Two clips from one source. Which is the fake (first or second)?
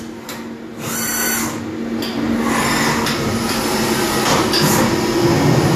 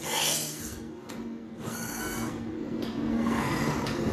second